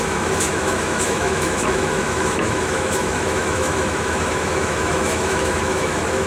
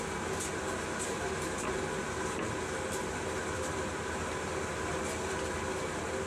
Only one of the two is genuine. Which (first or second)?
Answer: second